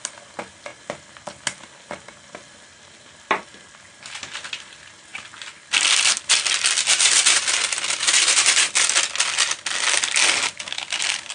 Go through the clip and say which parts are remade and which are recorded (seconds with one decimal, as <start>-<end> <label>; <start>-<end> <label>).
0.0-11.3 recorded